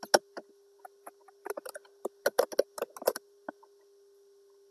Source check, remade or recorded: recorded